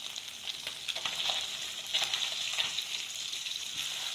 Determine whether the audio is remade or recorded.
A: recorded